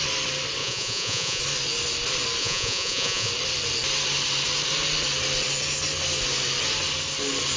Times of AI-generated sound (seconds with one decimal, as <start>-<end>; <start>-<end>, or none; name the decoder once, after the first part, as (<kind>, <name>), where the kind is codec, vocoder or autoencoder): 0.6-1.4 (vocoder, Vocos); 2.4-3.3